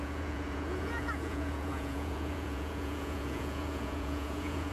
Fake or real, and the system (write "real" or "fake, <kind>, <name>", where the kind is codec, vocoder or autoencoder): fake, vocoder, Vocos